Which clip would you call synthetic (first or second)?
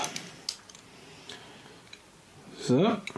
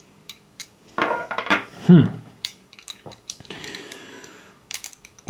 second